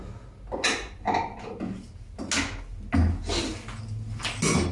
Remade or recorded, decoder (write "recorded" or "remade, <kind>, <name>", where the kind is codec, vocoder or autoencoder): recorded